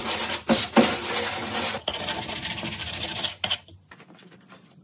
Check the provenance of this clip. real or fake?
real